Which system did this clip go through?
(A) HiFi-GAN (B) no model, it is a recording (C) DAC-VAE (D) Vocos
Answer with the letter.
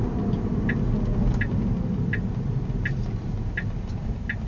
B